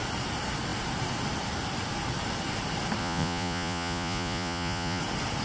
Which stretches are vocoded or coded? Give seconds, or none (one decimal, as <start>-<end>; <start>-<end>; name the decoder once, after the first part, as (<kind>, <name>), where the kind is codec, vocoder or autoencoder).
3.0-5.0 (vocoder, Vocos)